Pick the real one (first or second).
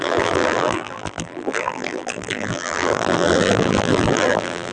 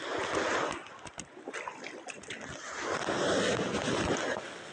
second